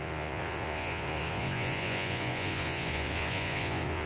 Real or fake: fake